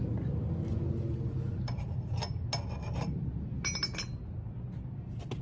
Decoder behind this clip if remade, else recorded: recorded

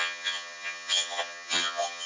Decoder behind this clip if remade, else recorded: remade, vocoder, HiFi-GAN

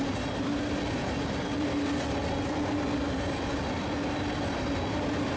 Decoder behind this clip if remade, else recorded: recorded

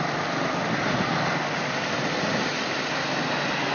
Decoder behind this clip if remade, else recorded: recorded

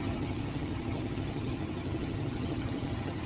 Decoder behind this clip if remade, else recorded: remade, vocoder, HiFi-GAN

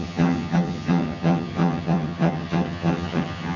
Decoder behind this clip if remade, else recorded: remade, vocoder, HiFi-GAN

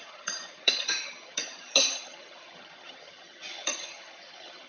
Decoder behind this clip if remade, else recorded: remade, vocoder, HiFi-GAN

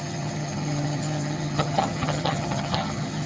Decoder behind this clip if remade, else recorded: remade, vocoder, HiFi-GAN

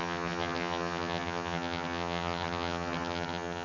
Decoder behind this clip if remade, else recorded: remade, vocoder, HiFi-GAN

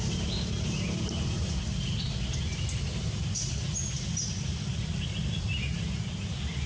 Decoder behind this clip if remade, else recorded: recorded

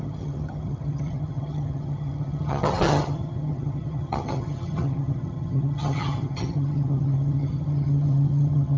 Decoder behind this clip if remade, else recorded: remade, vocoder, HiFi-GAN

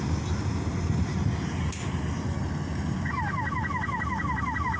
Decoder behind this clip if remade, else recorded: recorded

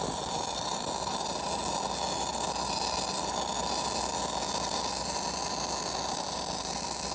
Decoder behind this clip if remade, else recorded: recorded